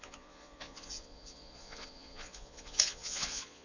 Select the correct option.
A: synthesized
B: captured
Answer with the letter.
A